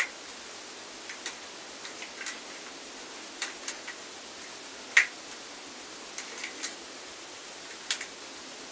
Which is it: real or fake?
real